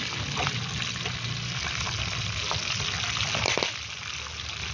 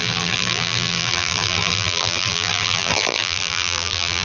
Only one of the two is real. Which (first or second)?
first